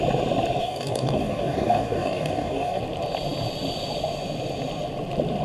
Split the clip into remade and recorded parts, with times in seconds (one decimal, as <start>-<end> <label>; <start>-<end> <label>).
0.0-0.6 recorded; 0.6-2.8 remade; 2.8-5.4 recorded